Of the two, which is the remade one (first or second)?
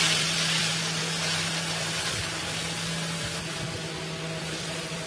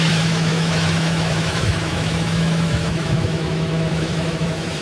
second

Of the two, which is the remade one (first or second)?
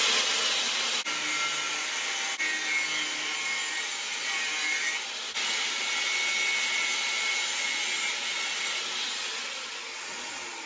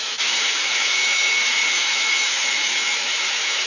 second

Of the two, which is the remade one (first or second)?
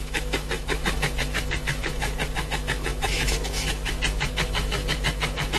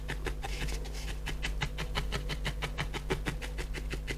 first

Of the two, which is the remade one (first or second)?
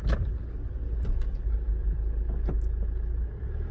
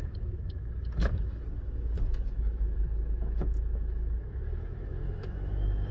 second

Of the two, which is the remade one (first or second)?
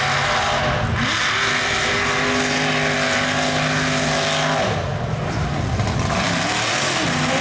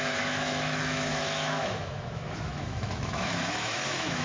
second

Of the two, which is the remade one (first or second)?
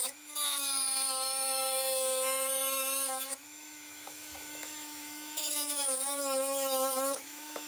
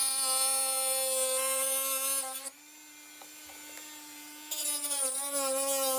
first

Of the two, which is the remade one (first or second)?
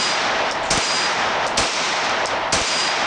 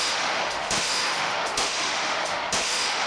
second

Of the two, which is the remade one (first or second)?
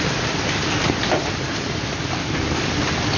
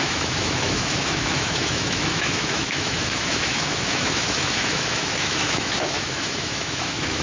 second